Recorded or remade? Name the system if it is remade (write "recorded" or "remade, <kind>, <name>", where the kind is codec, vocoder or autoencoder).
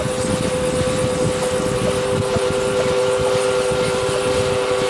recorded